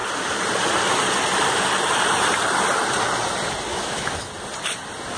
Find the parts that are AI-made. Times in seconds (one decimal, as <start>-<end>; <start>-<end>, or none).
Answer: 3.7-4.3